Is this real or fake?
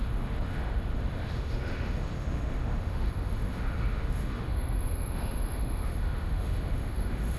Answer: fake